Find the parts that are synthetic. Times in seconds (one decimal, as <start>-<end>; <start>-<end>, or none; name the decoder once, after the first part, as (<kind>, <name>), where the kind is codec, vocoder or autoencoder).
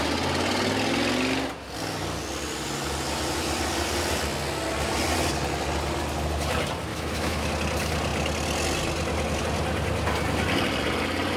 6.9-7.5 (autoencoder, DAC-VAE)